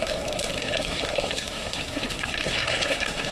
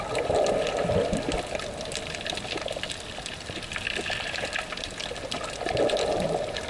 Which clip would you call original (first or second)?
second